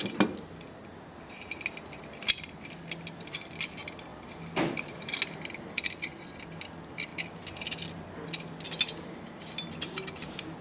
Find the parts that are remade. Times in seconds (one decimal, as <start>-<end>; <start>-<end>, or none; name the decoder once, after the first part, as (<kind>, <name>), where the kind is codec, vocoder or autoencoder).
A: none